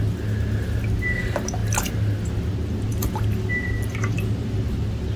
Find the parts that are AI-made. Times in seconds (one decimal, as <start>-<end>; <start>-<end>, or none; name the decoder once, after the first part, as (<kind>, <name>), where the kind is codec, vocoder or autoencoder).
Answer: none